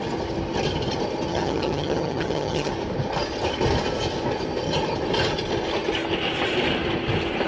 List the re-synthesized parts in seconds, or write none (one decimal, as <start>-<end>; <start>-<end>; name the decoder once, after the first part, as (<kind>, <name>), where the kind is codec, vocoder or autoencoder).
1.3-2.7 (vocoder, HiFi-GAN)